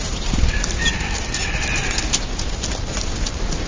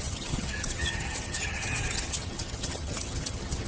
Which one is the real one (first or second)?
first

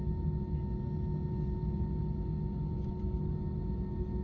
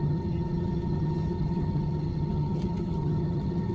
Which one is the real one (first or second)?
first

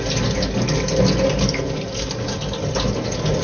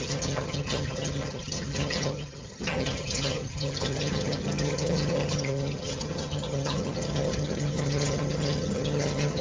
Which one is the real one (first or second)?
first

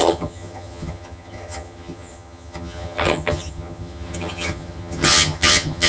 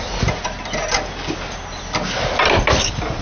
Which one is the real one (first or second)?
second